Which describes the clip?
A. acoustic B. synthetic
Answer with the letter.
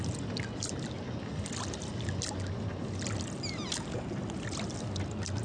A